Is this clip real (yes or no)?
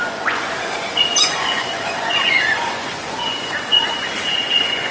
no